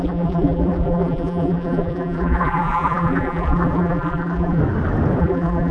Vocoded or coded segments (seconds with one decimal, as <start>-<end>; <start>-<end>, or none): 0.0-4.6; 5.2-5.7